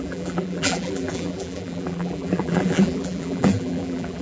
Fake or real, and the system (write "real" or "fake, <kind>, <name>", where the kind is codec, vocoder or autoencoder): fake, vocoder, BigVGAN v2